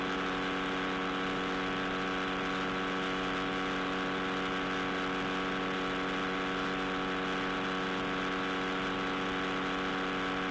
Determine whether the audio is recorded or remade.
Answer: recorded